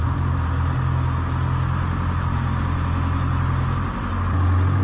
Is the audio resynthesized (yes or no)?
no